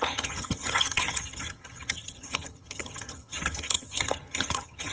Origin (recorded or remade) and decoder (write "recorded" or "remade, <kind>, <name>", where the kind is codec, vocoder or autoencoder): remade, vocoder, HiFi-GAN